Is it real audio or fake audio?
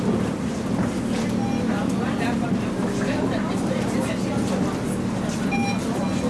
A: real